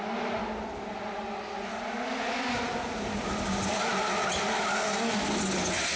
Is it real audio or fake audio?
real